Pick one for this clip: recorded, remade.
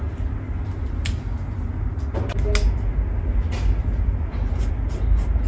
recorded